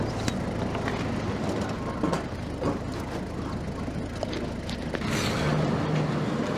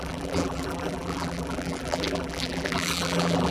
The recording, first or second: first